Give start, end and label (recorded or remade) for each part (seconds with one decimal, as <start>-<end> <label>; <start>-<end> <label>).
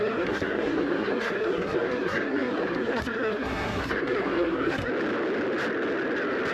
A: 0.0-4.9 remade; 4.9-6.5 recorded